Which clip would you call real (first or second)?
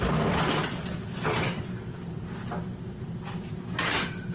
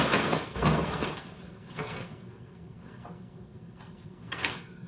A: first